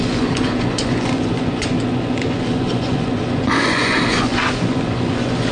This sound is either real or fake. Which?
fake